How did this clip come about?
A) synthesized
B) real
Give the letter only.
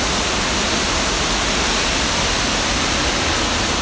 B